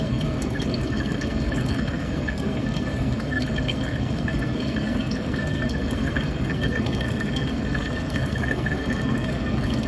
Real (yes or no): no